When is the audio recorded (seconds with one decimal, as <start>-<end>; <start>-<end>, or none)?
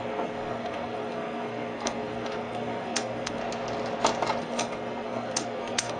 3.4-4.4